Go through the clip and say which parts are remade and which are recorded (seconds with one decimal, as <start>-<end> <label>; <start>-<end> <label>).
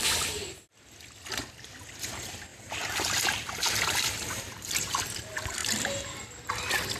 0.0-2.5 recorded; 2.5-5.0 remade; 5.0-7.0 recorded